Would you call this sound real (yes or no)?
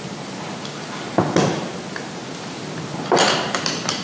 yes